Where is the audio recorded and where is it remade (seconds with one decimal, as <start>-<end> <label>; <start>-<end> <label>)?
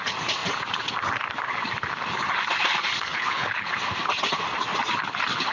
0.0-3.1 recorded; 3.1-3.7 remade; 3.7-5.5 recorded